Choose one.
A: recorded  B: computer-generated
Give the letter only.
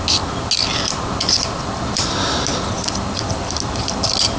A